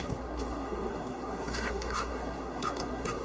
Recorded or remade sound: remade